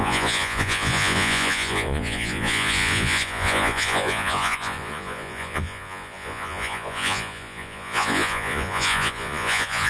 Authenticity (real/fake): fake